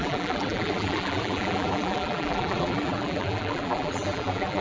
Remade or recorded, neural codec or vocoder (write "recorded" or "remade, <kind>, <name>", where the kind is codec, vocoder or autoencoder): remade, vocoder, BigVGAN v2